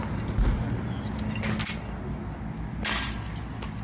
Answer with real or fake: real